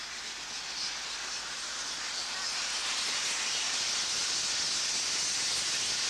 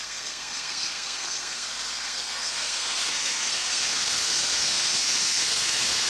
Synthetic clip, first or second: second